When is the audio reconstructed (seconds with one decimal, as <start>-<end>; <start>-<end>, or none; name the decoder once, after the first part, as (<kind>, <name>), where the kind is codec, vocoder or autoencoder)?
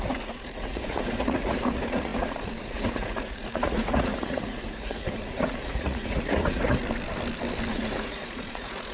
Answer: 0.0-6.8 (vocoder, Vocos); 7.7-8.9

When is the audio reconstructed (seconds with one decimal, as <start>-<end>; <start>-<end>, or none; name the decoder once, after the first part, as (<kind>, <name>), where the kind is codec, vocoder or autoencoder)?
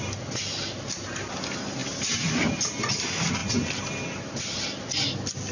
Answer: none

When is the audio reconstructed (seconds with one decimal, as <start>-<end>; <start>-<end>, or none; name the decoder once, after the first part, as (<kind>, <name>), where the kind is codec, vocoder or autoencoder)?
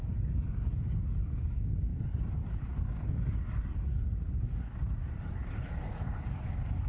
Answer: 1.9-2.7 (vocoder, BigVGAN v2)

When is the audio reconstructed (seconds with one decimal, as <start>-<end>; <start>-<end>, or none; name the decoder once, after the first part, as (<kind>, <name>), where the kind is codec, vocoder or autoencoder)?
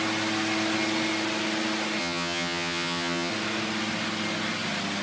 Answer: 2.0-3.3 (vocoder, HiFi-GAN)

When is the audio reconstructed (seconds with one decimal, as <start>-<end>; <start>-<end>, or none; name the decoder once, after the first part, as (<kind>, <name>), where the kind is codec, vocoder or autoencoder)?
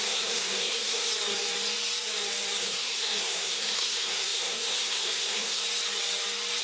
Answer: 0.0-1.1 (codec, SNAC); 2.6-5.6